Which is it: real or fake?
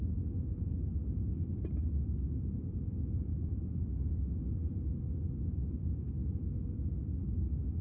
real